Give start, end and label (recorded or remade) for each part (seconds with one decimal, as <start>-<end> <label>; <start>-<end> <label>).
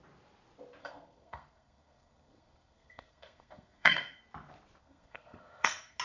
0.0-0.8 recorded; 0.8-4.2 remade; 4.2-4.8 recorded; 4.8-6.0 remade